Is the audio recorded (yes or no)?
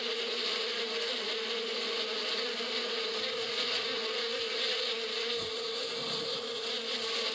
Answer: yes